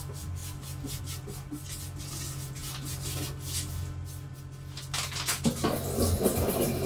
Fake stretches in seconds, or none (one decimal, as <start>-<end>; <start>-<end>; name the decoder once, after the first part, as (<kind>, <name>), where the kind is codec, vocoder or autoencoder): none